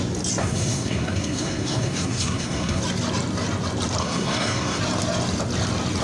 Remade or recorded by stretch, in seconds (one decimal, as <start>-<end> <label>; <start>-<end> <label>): 0.0-0.4 recorded; 0.4-2.8 remade; 2.8-4.0 recorded; 4.0-4.8 remade; 4.8-6.0 recorded